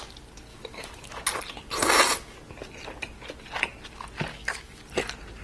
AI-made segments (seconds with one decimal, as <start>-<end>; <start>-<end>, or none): 0.5-1.2; 4.3-4.8